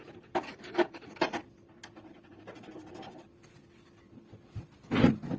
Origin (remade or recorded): recorded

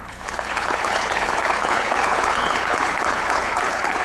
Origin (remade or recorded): remade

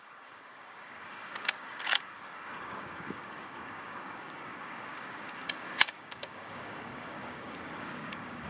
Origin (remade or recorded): remade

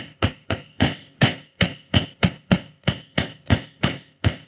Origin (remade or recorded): remade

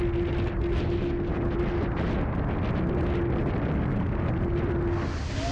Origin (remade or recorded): recorded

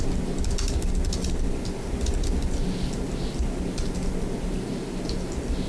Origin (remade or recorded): recorded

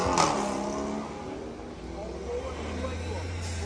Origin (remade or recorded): recorded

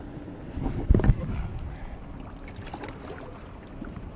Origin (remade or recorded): recorded